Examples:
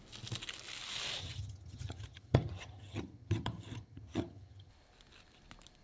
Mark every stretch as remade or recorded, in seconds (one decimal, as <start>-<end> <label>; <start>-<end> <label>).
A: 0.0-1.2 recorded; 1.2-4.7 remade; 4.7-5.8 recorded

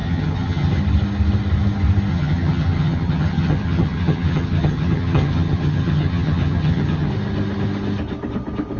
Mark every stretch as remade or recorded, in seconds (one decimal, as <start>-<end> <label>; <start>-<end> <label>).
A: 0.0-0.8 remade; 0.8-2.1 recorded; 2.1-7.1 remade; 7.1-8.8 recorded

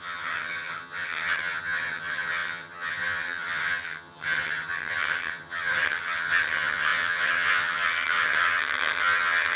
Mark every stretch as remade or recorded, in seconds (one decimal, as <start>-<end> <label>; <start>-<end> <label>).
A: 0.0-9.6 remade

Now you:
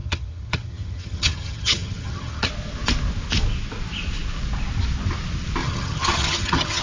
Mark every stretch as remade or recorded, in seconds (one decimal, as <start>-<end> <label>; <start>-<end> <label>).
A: 0.0-2.5 remade; 2.5-5.6 recorded; 5.6-6.8 remade